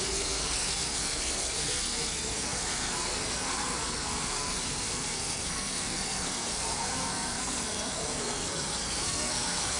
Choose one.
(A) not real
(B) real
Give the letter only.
A